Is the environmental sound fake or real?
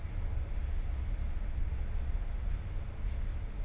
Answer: real